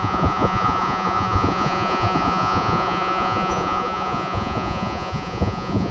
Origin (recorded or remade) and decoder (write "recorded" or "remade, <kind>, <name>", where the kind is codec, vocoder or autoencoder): remade, vocoder, Vocos